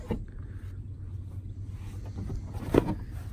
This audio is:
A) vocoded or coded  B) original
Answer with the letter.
B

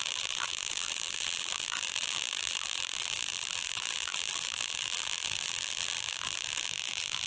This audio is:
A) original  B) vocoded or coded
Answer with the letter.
B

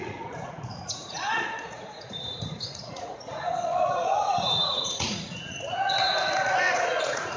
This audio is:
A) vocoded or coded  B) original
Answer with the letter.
A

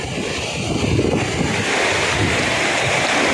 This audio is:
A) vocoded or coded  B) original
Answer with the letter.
B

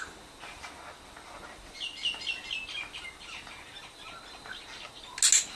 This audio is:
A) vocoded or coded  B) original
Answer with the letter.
B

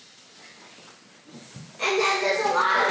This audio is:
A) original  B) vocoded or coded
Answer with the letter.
A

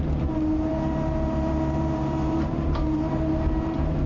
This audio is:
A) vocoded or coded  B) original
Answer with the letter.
A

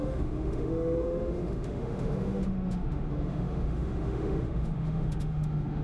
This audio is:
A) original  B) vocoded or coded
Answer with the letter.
B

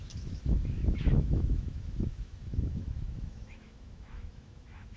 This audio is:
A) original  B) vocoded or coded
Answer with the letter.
B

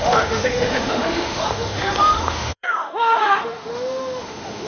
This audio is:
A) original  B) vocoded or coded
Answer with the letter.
B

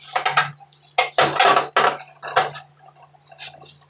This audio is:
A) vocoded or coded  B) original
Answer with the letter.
B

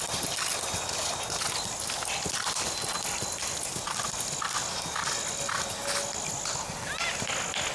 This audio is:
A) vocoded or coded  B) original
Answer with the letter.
B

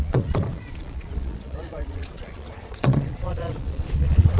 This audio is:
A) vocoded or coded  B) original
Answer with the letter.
A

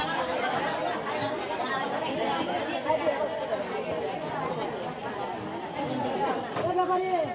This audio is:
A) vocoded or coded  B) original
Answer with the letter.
B